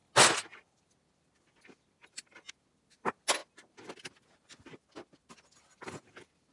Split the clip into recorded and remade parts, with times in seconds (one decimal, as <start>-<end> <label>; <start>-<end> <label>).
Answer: 0.0-6.5 recorded